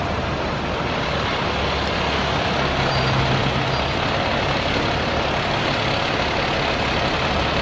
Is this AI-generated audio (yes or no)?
no